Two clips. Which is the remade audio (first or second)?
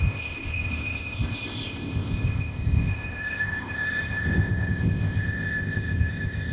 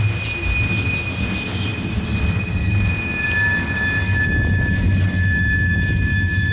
first